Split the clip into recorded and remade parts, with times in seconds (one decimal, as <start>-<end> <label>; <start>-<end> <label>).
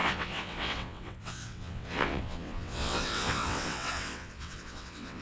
0.0-5.2 remade